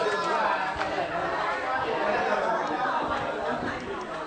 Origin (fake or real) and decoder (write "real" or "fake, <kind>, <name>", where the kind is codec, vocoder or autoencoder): real